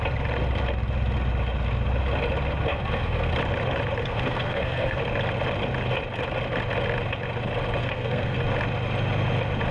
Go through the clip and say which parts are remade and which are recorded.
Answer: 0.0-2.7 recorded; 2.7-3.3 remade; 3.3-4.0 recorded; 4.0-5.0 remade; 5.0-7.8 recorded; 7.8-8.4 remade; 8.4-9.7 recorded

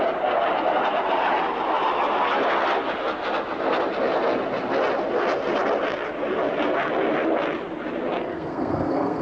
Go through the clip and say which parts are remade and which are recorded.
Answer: 0.0-8.3 recorded; 8.3-9.2 remade

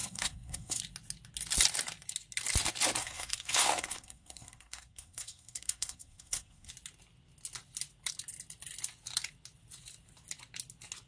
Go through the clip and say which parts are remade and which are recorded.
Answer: 0.0-0.8 remade; 0.8-3.0 recorded; 3.0-6.7 remade; 6.7-11.1 recorded

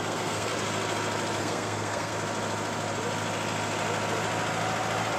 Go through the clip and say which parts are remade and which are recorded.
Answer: 0.0-0.5 remade; 0.5-1.4 recorded; 1.4-2.1 remade; 2.1-5.2 recorded

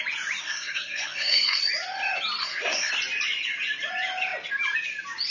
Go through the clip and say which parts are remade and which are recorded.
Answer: 0.0-0.4 recorded; 0.4-1.6 remade; 1.6-2.4 recorded; 2.4-2.9 remade; 2.9-5.3 recorded

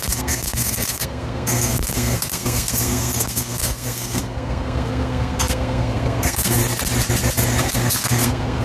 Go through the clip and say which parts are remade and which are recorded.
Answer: 0.0-6.6 remade; 6.6-7.6 recorded; 7.6-8.6 remade

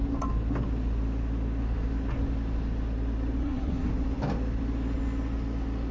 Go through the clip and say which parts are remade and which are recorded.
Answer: 0.0-3.4 recorded; 3.4-3.9 remade; 3.9-5.9 recorded